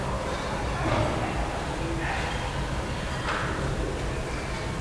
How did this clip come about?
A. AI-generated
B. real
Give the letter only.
B